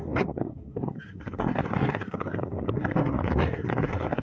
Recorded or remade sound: remade